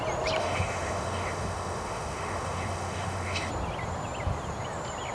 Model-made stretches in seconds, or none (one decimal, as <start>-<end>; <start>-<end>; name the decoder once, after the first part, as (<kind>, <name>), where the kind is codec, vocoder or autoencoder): 0.4-3.5 (autoencoder, DAC-VAE)